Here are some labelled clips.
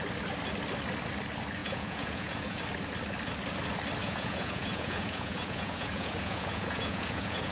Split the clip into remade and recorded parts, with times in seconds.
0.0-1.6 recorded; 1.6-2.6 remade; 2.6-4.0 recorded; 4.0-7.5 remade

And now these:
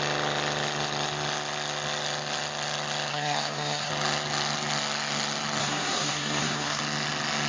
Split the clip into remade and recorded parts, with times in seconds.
0.0-3.1 recorded; 3.1-3.9 remade; 3.9-5.6 recorded; 5.6-6.8 remade; 6.8-7.5 recorded

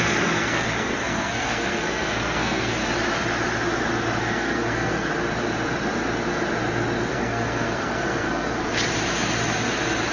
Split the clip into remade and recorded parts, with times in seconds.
0.0-2.8 remade; 2.8-4.2 recorded; 4.2-5.1 remade; 5.1-7.1 recorded; 7.1-8.7 remade; 8.7-10.1 recorded

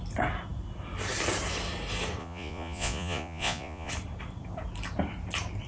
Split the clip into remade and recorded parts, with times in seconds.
0.0-2.2 recorded; 2.2-3.9 remade; 3.9-5.7 recorded

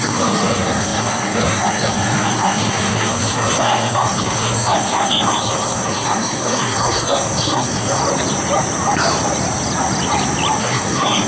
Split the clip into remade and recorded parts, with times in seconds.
0.0-8.0 remade; 8.0-10.6 recorded; 10.6-11.3 remade

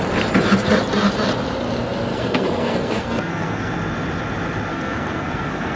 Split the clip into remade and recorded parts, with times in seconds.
0.0-2.1 recorded; 2.1-3.7 remade; 3.7-4.7 recorded; 4.7-5.8 remade

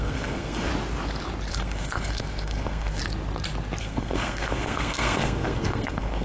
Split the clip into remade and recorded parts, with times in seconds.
0.0-0.7 remade; 0.7-1.5 recorded; 1.5-3.0 remade; 3.0-3.8 recorded; 3.8-6.2 remade